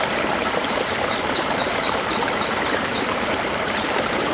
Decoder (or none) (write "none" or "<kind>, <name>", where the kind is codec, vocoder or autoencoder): vocoder, BigVGAN v2